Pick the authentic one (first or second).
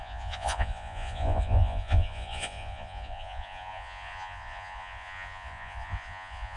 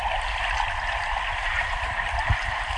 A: second